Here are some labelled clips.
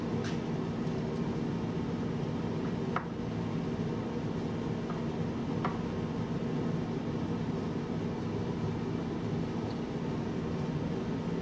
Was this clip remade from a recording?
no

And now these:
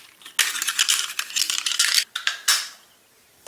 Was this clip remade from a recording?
no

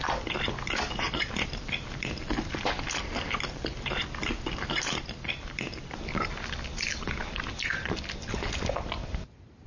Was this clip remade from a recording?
no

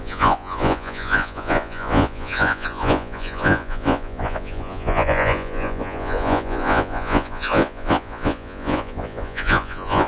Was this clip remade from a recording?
yes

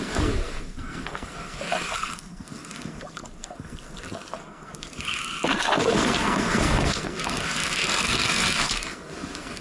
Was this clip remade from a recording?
yes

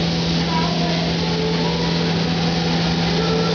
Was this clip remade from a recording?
no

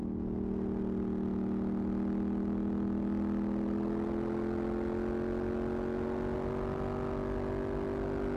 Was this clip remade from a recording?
no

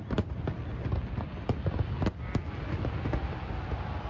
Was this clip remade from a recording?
no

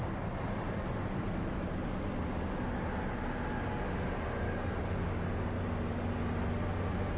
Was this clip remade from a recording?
no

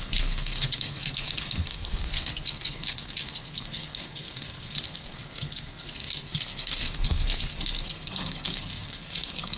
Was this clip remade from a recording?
yes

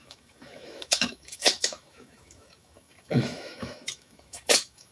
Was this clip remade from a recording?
yes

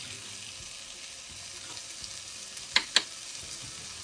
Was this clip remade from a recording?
no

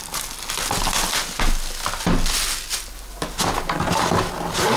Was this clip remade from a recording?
no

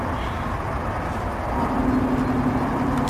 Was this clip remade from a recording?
no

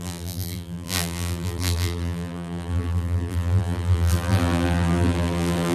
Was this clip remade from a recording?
yes